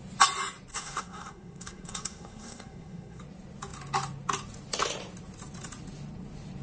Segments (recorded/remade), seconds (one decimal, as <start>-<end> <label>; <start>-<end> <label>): 0.0-0.7 recorded; 0.7-3.2 remade; 3.2-6.6 recorded

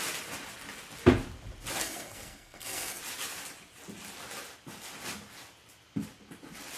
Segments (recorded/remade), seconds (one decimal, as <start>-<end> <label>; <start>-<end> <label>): 0.0-1.8 recorded; 1.8-3.0 remade; 3.0-6.8 recorded

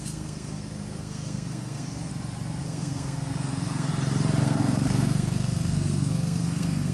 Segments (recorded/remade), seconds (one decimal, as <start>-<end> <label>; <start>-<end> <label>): 0.0-2.1 remade; 2.1-2.6 recorded; 2.6-3.9 remade; 3.9-4.4 recorded; 4.4-6.9 remade

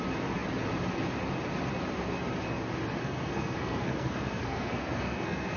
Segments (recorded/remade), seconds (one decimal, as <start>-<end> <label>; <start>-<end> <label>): 0.0-3.0 recorded; 3.0-5.6 remade

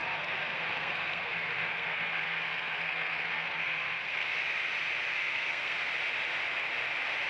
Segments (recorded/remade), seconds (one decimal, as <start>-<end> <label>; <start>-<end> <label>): 0.0-4.4 remade; 4.4-5.1 recorded; 5.1-5.9 remade; 5.9-7.3 recorded